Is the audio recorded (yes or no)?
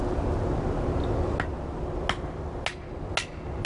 yes